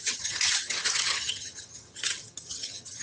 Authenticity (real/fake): fake